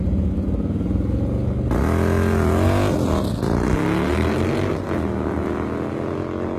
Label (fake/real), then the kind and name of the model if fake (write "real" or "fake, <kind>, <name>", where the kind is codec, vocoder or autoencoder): real